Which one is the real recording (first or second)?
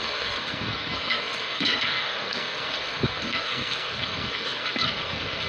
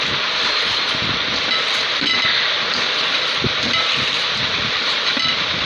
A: second